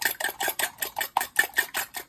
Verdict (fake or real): real